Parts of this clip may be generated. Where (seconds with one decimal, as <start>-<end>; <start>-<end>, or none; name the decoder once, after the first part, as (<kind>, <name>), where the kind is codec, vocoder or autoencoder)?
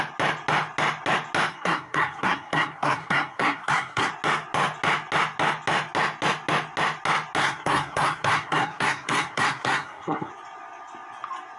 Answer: 1.5-4.1 (codec, SNAC); 7.4-10.3